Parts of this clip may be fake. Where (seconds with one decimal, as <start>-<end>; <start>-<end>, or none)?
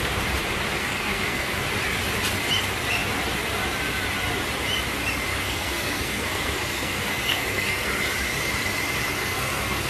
0.8-1.6; 5.3-7.9; 9.2-9.9